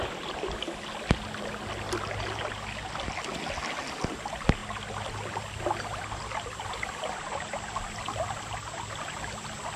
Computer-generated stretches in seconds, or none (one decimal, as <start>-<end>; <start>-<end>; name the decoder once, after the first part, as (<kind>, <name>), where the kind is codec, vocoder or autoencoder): none

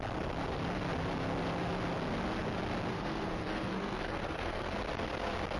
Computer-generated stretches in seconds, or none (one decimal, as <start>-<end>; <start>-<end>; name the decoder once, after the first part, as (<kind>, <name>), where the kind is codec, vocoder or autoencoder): 2.9-4.7 (codec, SNAC)

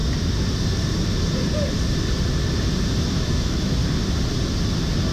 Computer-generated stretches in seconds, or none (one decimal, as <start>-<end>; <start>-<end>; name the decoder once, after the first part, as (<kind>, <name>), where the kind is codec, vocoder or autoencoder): 3.1-3.8 (autoencoder, DAC-VAE)

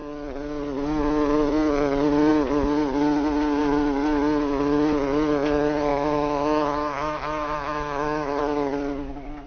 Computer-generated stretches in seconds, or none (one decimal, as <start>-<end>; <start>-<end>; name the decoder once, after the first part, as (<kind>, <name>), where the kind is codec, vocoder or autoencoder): 5.9-8.4 (autoencoder, DAC-VAE)

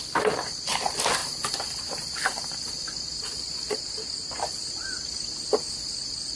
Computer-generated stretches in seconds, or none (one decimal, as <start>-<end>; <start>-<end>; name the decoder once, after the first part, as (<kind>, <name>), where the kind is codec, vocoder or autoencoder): none

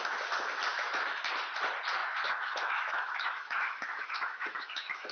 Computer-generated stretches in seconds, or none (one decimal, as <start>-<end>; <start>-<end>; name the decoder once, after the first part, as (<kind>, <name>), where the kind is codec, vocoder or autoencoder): 0.7-1.2 (autoencoder, DAC-VAE); 2.0-5.1

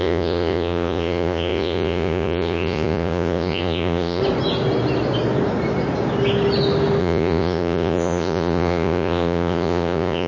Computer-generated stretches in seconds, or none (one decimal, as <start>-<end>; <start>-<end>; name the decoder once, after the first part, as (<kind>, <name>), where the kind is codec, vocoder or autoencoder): 0.0-4.2 (vocoder, Vocos); 7.0-10.3